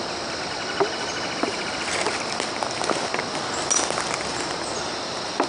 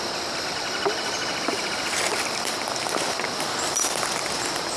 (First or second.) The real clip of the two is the first